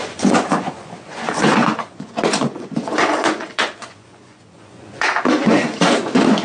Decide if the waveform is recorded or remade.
remade